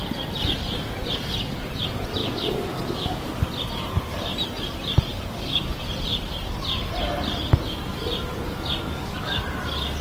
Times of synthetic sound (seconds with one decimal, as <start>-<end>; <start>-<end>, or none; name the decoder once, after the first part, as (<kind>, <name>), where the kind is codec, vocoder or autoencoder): 2.2-3.3 (codec, DAC); 5.1-5.7; 8.8-9.4